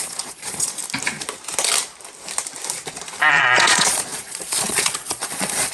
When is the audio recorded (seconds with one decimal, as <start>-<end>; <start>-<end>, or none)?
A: 0.8-3.3